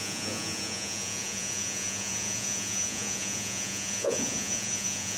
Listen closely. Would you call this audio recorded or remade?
remade